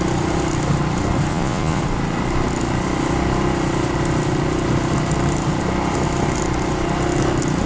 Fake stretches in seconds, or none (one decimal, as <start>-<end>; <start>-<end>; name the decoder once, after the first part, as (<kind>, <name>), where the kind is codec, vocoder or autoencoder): 1.3-1.8 (vocoder, Vocos)